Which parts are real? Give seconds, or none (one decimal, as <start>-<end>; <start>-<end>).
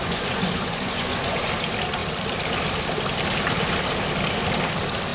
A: 1.4-5.1